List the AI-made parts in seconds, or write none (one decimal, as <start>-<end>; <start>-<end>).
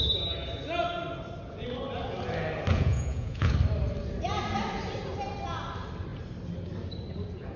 2.7-3.5